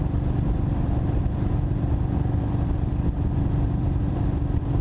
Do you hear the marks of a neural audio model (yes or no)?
yes